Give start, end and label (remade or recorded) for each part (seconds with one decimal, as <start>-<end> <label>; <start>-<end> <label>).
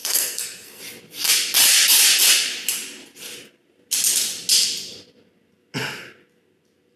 0.0-0.8 remade; 0.8-7.0 recorded